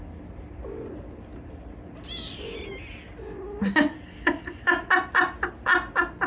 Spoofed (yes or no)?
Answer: no